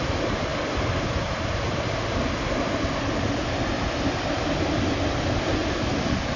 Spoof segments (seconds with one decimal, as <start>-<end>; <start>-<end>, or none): none